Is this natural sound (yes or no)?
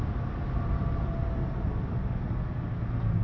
yes